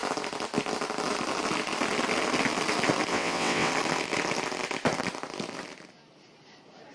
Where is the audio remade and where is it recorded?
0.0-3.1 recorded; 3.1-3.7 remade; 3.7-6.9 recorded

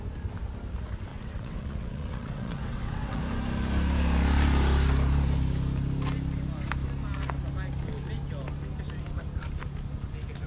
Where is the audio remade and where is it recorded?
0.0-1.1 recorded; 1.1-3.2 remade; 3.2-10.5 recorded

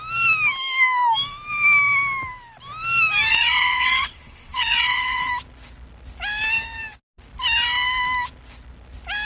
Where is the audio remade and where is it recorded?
0.0-3.3 recorded; 3.3-5.3 remade; 5.3-9.2 recorded